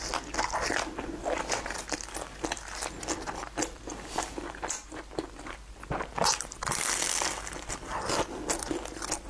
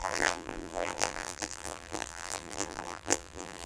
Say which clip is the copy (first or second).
second